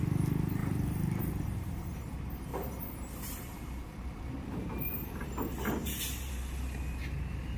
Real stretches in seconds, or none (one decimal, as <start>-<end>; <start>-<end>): 0.0-0.6; 1.2-2.5; 5.3-5.8; 6.3-7.6